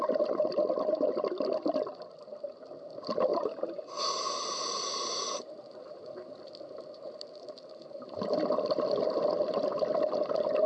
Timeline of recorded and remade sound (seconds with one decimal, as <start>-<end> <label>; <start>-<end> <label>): 0.0-3.3 recorded; 3.3-3.8 remade; 3.8-10.7 recorded